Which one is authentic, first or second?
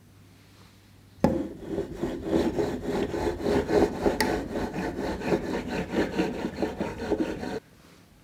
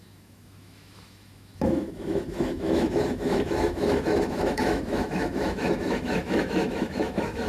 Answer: first